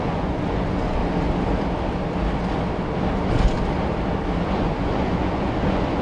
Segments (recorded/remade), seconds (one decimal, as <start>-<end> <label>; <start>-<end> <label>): 0.0-1.0 remade; 1.0-4.6 recorded; 4.6-6.0 remade